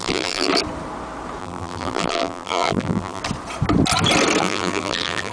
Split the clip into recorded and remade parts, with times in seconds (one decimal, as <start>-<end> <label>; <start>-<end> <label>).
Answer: 0.0-0.5 remade; 0.5-1.4 recorded; 1.4-3.2 remade; 3.2-4.4 recorded; 4.4-5.3 remade